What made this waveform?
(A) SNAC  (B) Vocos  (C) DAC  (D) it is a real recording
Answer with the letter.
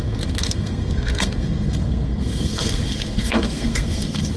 A